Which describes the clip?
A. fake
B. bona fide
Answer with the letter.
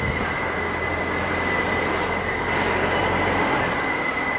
B